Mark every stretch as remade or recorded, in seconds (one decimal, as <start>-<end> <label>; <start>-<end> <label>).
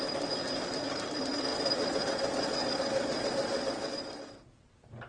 0.0-1.5 recorded; 1.5-3.9 remade; 3.9-5.1 recorded